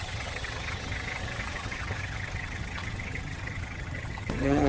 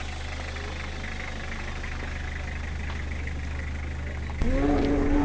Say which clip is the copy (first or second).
first